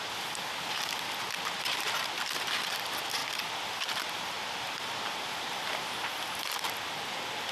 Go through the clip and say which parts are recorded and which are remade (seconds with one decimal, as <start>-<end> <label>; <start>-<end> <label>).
0.0-7.5 recorded